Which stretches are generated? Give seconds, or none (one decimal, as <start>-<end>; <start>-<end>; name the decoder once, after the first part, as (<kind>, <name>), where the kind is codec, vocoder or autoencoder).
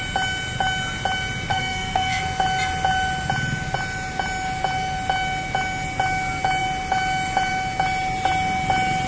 1.5-2.2 (codec, SNAC)